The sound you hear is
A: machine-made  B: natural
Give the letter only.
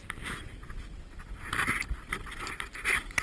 B